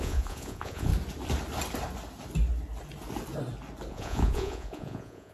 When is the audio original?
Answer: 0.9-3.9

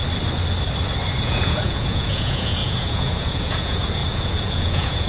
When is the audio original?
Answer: 0.0-1.2